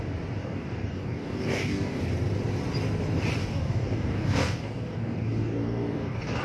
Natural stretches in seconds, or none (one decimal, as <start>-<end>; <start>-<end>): 0.0-0.4; 2.0-3.4